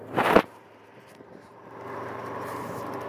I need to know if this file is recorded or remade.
remade